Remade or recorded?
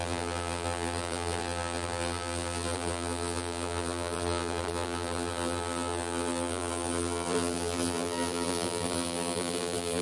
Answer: remade